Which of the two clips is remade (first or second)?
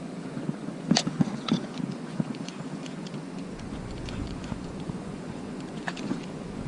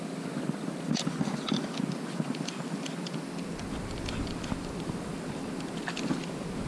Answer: first